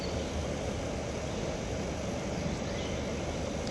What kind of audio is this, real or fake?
real